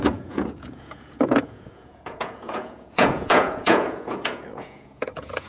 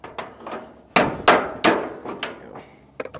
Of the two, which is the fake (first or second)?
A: first